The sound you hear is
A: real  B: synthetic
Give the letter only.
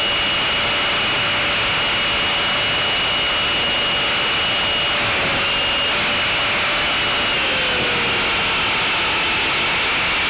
A